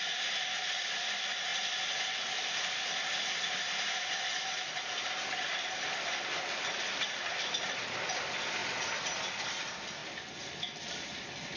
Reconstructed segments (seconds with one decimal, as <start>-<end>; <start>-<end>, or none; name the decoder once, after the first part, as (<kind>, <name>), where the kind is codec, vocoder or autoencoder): none

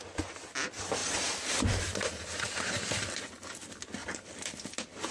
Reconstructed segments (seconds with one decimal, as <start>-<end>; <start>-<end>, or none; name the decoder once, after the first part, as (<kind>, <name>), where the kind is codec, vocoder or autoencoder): none

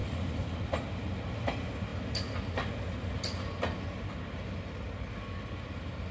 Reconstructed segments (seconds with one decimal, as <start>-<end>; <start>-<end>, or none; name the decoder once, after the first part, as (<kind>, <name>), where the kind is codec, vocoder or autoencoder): 0.0-0.6 (vocoder, BigVGAN v2)